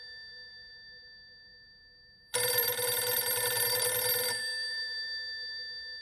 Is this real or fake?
fake